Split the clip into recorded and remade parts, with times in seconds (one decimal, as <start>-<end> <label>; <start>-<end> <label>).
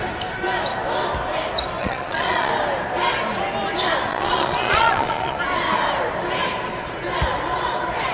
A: 0.0-1.8 recorded; 1.8-2.5 remade; 2.5-4.1 recorded; 4.1-5.4 remade; 5.4-8.1 recorded